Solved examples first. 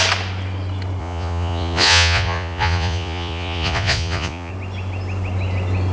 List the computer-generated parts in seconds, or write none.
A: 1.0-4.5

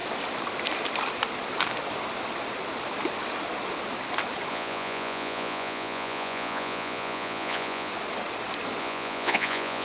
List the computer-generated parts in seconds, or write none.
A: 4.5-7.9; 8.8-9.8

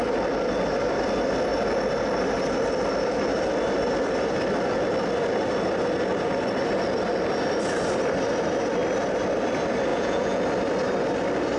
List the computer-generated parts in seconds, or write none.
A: 9.9-10.4

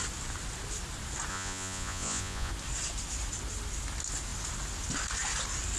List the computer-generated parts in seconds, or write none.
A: 1.3-2.5